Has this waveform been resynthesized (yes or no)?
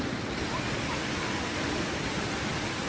no